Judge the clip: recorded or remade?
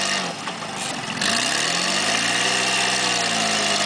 recorded